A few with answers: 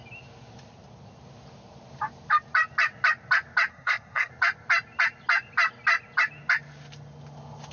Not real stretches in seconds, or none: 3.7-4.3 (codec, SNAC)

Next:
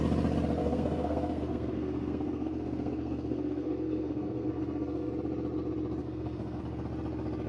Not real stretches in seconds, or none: 0.6-5.1 (codec, SNAC); 6.0-6.6

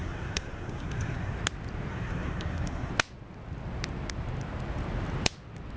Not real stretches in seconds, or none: 0.0-1.4 (codec, SNAC); 1.9-2.9

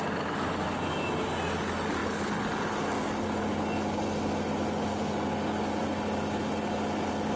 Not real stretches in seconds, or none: none

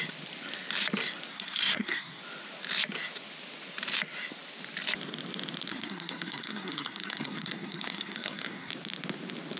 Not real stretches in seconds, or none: 1.3-2.2 (codec, SNAC); 5.7-8.7

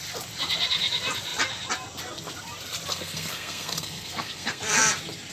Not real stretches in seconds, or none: 2.9-4.6 (codec, SNAC)

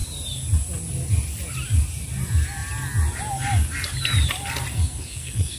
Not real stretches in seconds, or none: 4.7-5.6 (codec, SNAC)